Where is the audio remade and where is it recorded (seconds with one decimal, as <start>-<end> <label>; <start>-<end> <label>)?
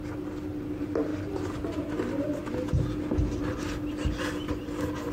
0.0-5.1 recorded